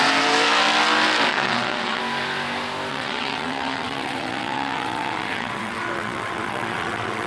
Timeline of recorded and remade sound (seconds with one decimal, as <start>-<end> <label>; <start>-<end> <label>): 0.0-1.3 recorded; 1.3-2.0 remade; 2.0-2.9 recorded; 2.9-7.3 remade